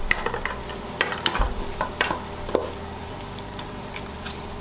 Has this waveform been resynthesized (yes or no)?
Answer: yes